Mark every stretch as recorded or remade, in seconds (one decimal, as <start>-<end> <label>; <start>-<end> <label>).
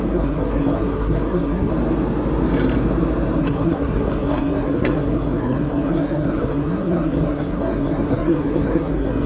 0.0-1.7 remade; 1.7-3.4 recorded; 3.4-9.3 remade